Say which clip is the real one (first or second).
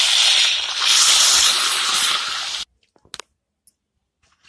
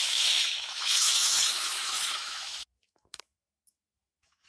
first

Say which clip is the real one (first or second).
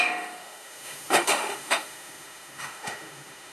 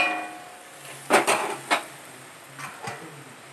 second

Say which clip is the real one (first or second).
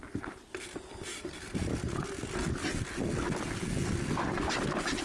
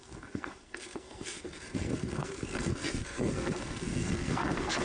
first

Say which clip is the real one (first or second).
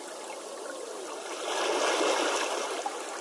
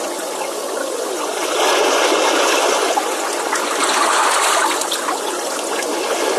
first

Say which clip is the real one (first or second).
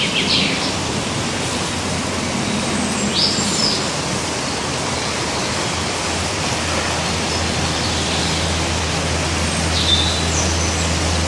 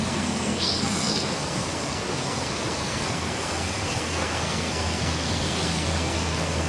first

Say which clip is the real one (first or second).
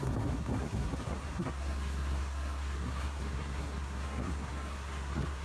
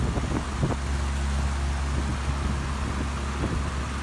second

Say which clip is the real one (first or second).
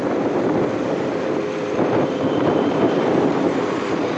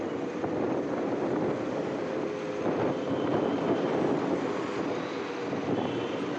second